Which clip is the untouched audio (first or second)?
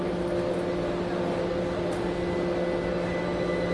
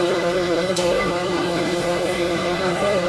first